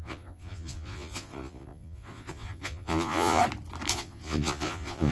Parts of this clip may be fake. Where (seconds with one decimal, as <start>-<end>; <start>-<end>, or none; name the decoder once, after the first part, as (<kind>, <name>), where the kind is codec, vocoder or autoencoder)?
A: 0.0-3.4 (vocoder, Vocos); 3.9-5.1